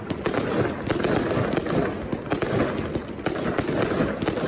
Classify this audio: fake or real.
real